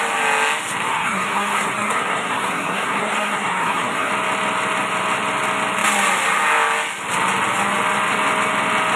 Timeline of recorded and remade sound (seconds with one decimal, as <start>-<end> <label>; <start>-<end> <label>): 0.0-0.9 recorded; 0.9-4.1 remade; 4.1-9.0 recorded